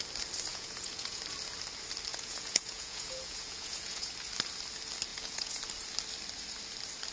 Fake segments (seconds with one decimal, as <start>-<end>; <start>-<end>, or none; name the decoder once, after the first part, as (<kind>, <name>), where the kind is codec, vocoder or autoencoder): 0.5-1.2 (vocoder, Vocos); 2.1-4.1; 5.1-5.6